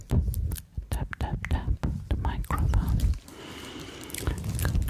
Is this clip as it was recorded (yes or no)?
yes